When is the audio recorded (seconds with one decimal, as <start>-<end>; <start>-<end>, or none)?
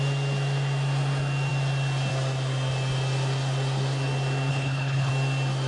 0.0-4.5; 5.1-5.7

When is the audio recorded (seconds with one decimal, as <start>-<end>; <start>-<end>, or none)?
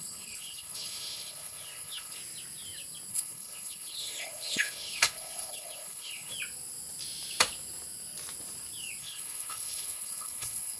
2.2-3.1; 6.3-9.0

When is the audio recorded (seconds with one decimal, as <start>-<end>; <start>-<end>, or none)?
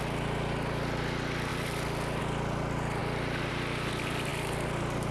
0.0-5.1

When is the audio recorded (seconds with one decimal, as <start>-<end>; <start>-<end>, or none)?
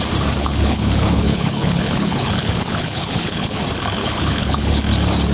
0.0-0.4; 3.6-4.0; 4.8-5.3